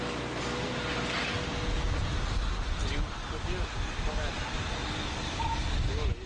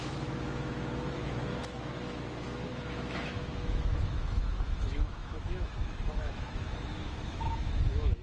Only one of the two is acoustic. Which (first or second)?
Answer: first